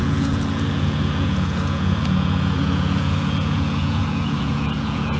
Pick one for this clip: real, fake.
fake